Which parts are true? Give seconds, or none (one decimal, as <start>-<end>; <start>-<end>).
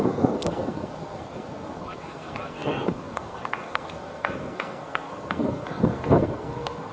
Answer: none